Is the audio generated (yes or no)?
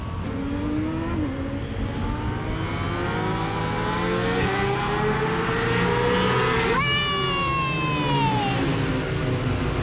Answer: no